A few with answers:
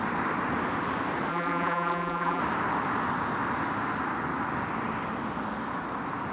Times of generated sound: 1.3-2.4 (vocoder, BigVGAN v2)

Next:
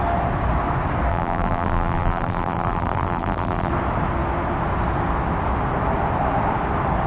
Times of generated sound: 1.1-3.7 (vocoder, BigVGAN v2)

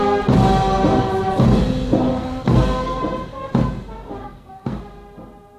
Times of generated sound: 2.1-3.0 (codec, SNAC); 4.2-4.8

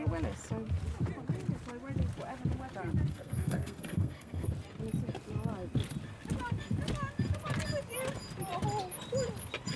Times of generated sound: 3.1-4.5 (codec, SNAC)

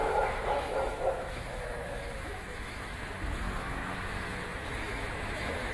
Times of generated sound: 0.0-5.7 (autoencoder, DAC-VAE)

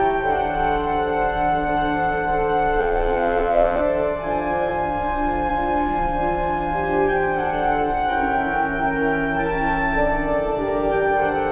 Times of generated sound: 2.8-3.8 (vocoder, BigVGAN v2)

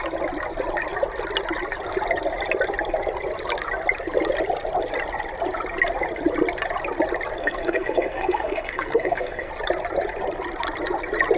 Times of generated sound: 7.4-9.5 (codec, SNAC)